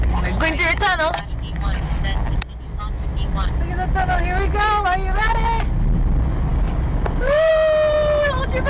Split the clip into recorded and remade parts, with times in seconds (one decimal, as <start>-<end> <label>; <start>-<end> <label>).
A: 0.0-6.5 recorded; 6.5-7.5 remade; 7.5-8.7 recorded